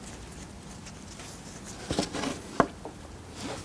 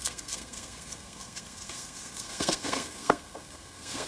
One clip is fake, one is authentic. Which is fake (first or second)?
second